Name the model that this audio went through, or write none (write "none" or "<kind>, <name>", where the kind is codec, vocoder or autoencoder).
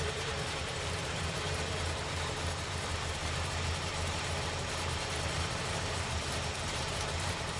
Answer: vocoder, BigVGAN v2